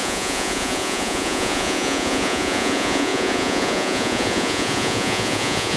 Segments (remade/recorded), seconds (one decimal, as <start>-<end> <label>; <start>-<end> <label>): 0.0-5.8 remade